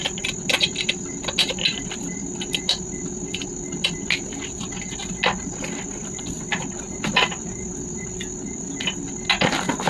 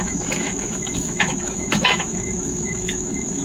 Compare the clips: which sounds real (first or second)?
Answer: first